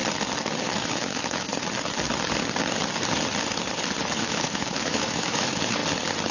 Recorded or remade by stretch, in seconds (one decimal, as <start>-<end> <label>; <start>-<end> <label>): 0.0-0.7 recorded; 0.7-1.5 remade; 1.5-4.2 recorded; 4.2-5.8 remade; 5.8-6.3 recorded